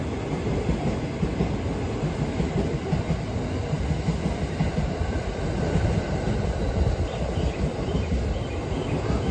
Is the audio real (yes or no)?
yes